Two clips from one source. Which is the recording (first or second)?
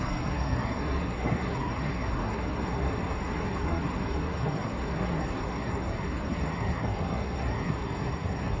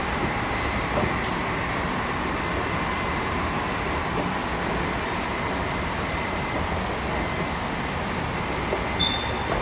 second